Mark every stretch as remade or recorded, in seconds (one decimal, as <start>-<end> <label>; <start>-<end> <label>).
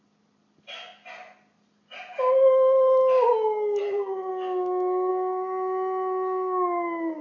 0.0-3.8 recorded; 3.8-4.3 remade; 4.3-7.2 recorded